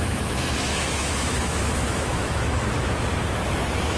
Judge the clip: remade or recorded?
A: remade